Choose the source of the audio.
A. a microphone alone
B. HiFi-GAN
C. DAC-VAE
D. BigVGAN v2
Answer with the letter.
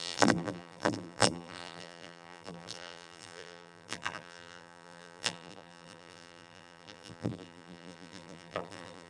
D